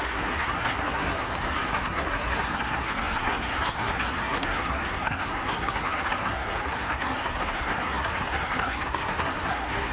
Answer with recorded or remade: remade